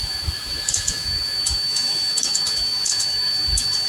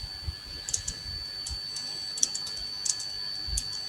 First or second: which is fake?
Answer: first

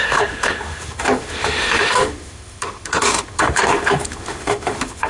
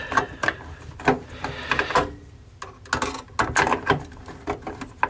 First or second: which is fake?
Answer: first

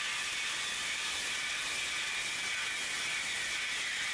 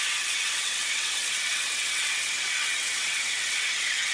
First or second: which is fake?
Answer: second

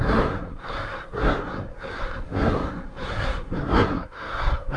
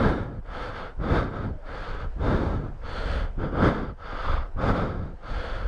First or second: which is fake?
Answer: first